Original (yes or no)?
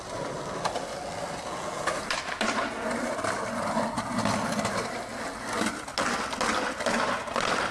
yes